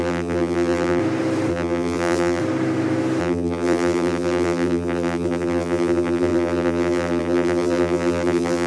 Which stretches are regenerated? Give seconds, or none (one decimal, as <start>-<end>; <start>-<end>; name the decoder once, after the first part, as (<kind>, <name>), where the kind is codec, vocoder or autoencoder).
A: 0.0-1.0 (vocoder, BigVGAN v2); 1.5-2.4; 3.2-8.7